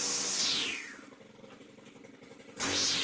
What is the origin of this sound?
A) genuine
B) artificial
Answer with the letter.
A